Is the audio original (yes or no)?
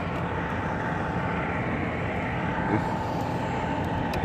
yes